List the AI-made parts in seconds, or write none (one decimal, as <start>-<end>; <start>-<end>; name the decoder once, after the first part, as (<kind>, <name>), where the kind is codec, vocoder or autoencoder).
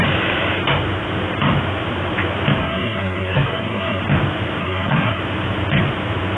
2.6-4.0 (codec, SNAC); 4.6-5.2